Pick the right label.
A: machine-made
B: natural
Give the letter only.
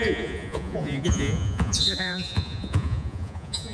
A